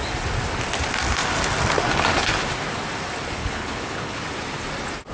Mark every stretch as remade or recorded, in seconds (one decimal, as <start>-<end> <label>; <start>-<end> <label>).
0.0-3.4 recorded; 3.4-4.2 remade; 4.2-5.1 recorded